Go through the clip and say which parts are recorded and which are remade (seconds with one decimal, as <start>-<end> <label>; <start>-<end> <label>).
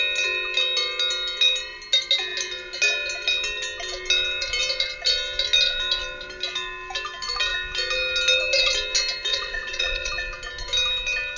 0.0-9.3 recorded; 9.3-10.1 remade; 10.1-11.4 recorded